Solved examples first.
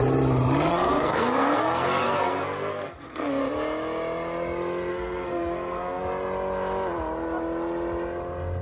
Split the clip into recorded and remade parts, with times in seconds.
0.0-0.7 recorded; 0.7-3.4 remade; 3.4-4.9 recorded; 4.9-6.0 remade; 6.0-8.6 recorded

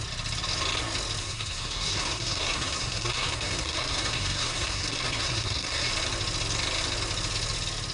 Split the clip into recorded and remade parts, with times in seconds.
0.0-1.2 recorded; 1.2-5.9 remade; 5.9-7.9 recorded

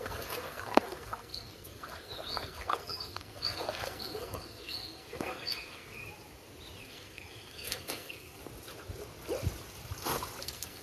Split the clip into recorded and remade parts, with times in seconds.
0.0-6.0 remade; 6.0-6.8 recorded; 6.8-8.4 remade; 8.4-10.4 recorded; 10.4-10.8 remade

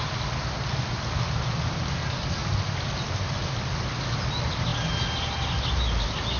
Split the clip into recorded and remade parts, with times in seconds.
0.0-6.4 recorded

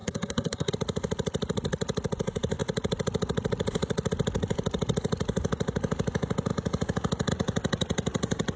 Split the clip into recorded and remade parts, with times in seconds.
0.0-0.7 remade; 0.7-8.6 recorded

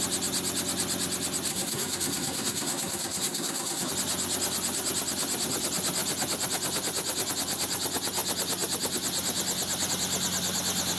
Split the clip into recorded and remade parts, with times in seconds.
0.0-1.5 recorded; 1.5-3.9 remade; 3.9-11.0 recorded

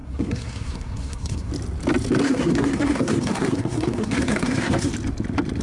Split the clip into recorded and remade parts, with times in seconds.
0.0-1.5 remade; 1.5-2.2 recorded; 2.2-4.9 remade; 4.9-5.6 recorded

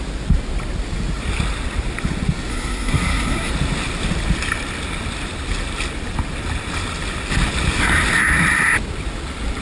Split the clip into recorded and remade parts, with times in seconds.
0.0-2.5 recorded; 2.5-3.5 remade; 3.5-9.6 recorded